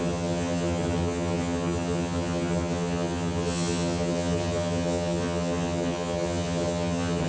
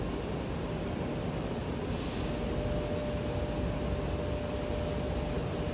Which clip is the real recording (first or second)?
second